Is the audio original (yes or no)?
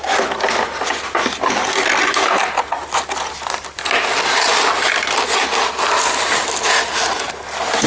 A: yes